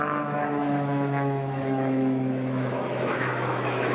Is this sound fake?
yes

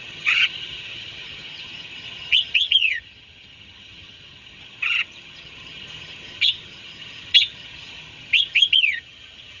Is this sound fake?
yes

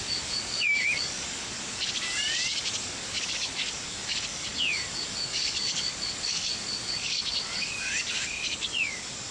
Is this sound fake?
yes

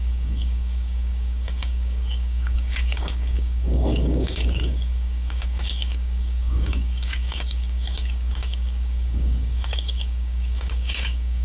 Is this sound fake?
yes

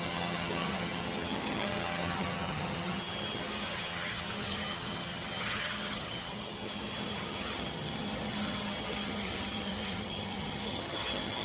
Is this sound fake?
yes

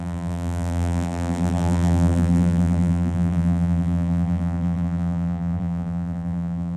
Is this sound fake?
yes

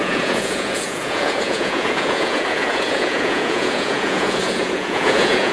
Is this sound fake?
yes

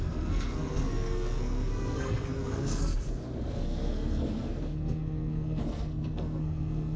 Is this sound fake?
yes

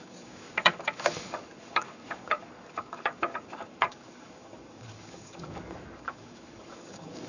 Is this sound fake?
yes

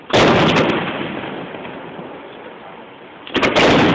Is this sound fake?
no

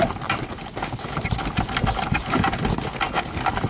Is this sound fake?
no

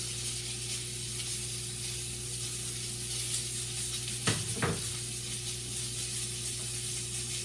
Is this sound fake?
no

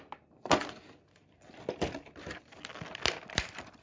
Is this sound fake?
no